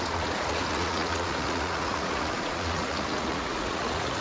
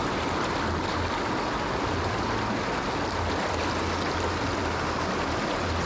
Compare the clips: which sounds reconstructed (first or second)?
first